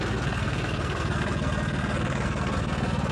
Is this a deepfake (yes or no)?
yes